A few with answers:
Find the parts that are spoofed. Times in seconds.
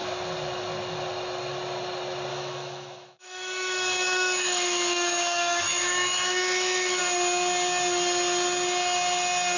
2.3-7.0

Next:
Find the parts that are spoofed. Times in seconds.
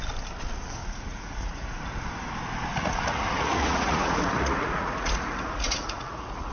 0.8-1.8; 2.7-6.5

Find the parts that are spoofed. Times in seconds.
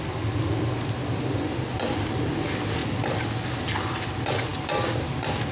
4.5-5.5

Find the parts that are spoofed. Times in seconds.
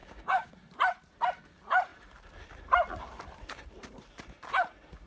0.0-0.5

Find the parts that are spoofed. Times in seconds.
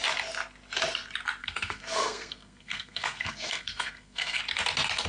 1.4-4.4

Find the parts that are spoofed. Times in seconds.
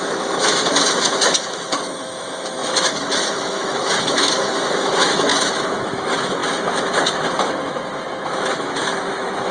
0.0-9.5